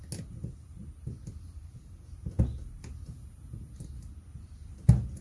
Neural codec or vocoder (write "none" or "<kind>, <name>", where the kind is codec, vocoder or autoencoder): none